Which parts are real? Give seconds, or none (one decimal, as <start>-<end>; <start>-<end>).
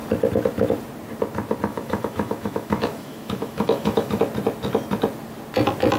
0.0-1.7; 4.2-6.0